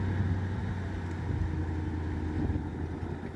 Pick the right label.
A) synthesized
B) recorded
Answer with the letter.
B